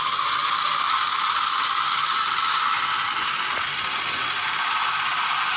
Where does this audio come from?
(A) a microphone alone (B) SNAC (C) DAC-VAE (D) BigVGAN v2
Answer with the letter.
D